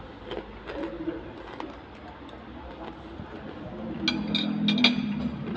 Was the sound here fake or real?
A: real